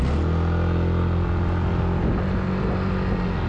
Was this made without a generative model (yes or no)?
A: yes